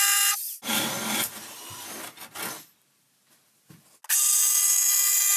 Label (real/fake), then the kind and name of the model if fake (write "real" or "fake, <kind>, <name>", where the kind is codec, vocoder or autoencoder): real